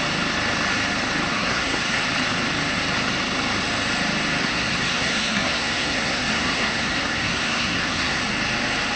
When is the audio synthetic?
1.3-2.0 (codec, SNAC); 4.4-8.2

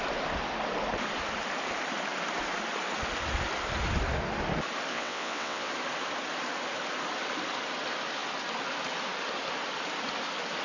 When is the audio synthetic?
4.9-5.7 (vocoder, WaveNeXt)

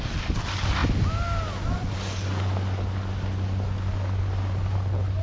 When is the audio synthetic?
none

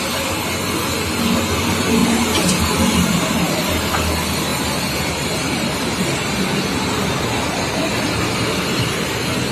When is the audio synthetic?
2.0-3.9 (vocoder, BigVGAN v2); 4.5-6.4

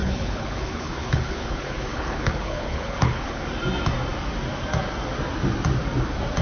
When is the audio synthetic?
0.0-3.4 (codec, HILCodec)

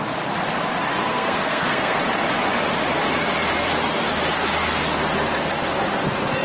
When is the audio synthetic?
1.1-2.0 (codec, SNAC)